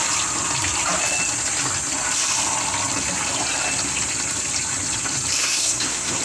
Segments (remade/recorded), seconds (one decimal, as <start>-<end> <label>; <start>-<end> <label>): 0.0-5.4 recorded; 5.4-6.2 remade